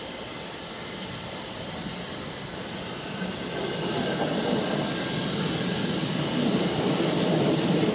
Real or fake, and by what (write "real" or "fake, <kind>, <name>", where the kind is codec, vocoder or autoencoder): real